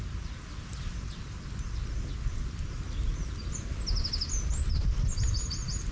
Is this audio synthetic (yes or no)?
no